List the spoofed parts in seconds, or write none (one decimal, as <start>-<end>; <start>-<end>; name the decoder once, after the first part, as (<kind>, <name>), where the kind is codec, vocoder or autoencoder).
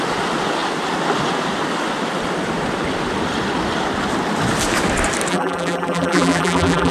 5.3-6.9 (vocoder, BigVGAN v2)